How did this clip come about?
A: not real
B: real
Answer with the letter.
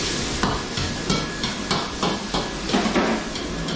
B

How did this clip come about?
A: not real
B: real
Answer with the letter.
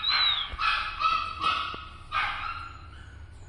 B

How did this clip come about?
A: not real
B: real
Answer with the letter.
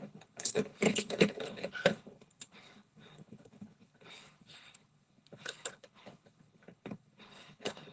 A